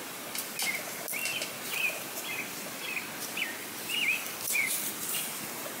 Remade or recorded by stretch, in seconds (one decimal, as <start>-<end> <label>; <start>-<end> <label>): 0.0-5.8 recorded